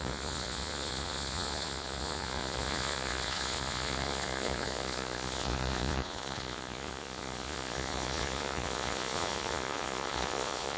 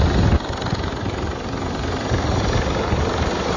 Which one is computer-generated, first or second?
first